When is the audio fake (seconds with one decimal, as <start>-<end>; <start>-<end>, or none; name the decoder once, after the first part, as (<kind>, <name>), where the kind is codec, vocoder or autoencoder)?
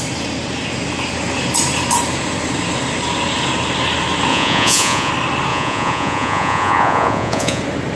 4.3-5.1 (vocoder, Vocos); 5.5-7.6